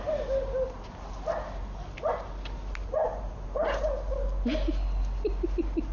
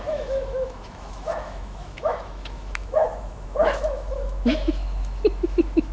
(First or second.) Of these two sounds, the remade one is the second